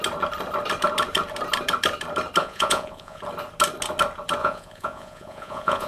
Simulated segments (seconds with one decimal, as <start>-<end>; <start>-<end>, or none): 2.4-3.2; 4.4-5.9